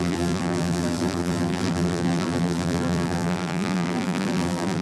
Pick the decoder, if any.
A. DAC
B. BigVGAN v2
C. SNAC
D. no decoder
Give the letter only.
B